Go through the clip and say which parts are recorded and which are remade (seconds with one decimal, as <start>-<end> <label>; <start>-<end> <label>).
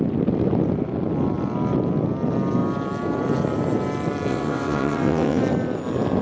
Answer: 0.0-4.3 recorded; 4.3-5.4 remade; 5.4-6.2 recorded